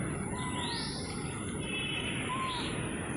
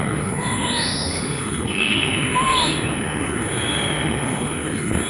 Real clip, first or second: first